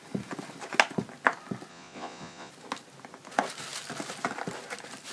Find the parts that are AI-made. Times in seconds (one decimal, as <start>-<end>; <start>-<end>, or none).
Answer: 1.7-2.5